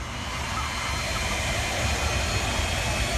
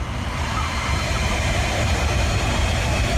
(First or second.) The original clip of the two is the first